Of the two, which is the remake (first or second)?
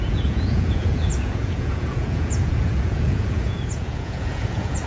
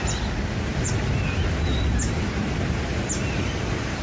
first